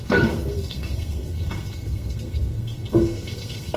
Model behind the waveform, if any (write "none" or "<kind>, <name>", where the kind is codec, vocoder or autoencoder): codec, SNAC